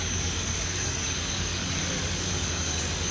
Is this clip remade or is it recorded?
remade